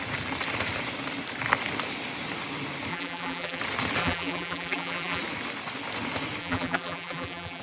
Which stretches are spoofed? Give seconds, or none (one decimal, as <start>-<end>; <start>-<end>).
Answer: 2.9-3.6; 4.0-5.2; 6.4-7.6